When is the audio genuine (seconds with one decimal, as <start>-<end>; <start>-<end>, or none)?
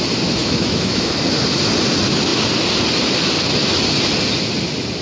0.0-0.4; 1.1-5.0